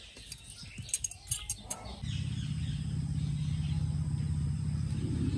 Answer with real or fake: real